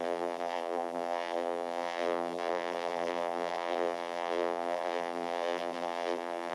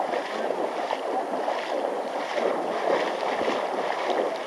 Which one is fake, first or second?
first